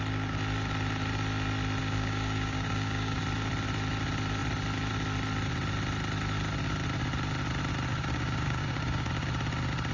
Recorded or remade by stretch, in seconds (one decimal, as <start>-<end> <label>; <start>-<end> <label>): 0.0-1.8 recorded; 1.8-3.2 remade; 3.2-7.9 recorded; 7.9-9.1 remade; 9.1-9.9 recorded